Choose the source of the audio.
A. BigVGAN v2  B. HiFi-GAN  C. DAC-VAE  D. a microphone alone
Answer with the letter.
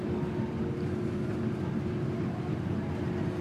D